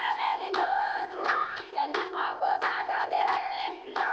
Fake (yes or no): yes